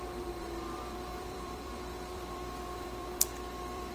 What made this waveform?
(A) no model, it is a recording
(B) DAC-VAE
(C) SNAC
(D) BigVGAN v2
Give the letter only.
D